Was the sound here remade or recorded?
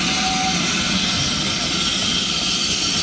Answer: recorded